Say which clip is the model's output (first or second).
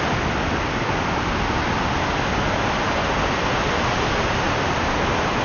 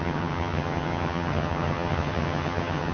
second